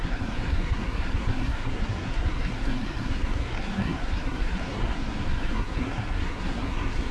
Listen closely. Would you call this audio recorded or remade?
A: remade